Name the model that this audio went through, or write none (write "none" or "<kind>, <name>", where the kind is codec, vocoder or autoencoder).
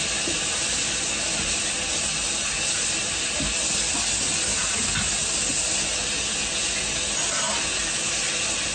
none